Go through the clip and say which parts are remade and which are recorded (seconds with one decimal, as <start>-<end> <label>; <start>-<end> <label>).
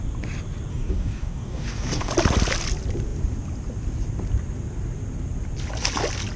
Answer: 0.0-0.7 recorded; 0.7-2.1 remade; 2.1-6.4 recorded